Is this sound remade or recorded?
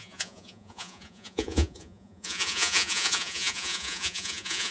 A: remade